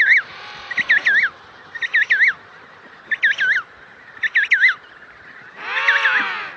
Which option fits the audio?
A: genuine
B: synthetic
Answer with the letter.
A